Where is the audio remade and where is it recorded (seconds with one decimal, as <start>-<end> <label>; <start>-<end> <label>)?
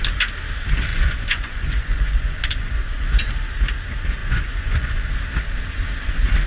0.0-0.9 recorded; 0.9-3.3 remade; 3.3-4.2 recorded; 4.2-5.1 remade; 5.1-6.5 recorded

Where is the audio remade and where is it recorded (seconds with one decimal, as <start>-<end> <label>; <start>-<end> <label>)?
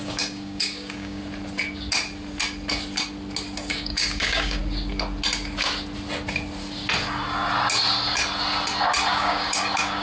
0.0-1.2 remade; 1.2-3.7 recorded; 3.7-4.6 remade; 4.6-9.1 recorded; 9.1-10.0 remade